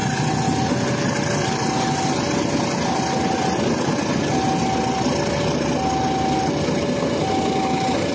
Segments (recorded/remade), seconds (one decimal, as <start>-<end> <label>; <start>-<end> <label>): 0.0-8.1 recorded